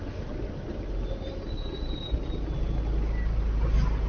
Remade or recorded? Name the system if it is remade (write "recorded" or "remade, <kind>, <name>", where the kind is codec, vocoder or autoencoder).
recorded